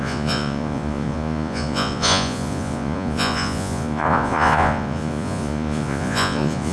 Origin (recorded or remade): remade